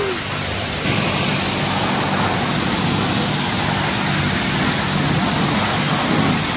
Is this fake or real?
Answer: real